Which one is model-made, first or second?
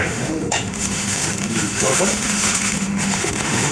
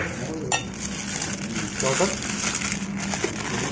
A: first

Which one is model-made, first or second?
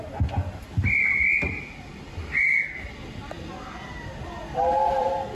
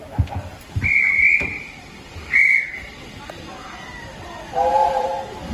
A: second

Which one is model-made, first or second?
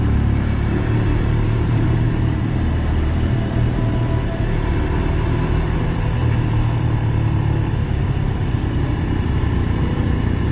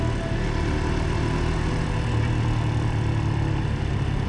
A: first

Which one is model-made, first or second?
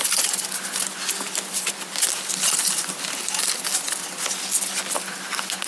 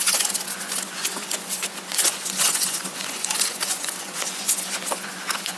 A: second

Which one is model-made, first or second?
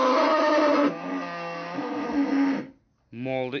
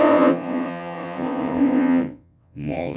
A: second